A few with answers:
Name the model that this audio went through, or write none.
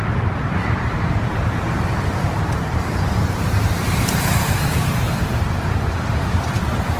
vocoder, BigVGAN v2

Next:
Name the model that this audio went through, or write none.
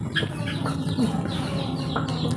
none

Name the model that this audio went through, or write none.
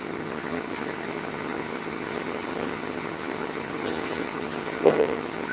vocoder, HiFi-GAN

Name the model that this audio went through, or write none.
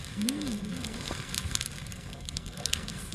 codec, SNAC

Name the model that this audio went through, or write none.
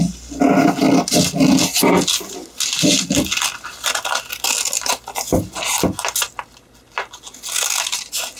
none